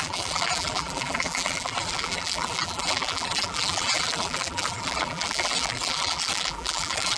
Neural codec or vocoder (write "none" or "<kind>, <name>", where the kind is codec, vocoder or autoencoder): vocoder, BigVGAN v2